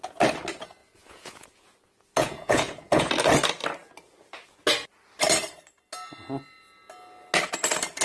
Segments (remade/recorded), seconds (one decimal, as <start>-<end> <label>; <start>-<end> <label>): 0.0-0.8 recorded; 0.8-3.1 remade; 3.1-8.0 recorded